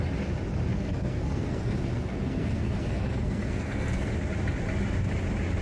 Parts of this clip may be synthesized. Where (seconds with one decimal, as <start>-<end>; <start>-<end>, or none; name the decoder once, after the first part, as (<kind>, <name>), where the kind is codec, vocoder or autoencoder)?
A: 0.7-4.1 (codec, SNAC)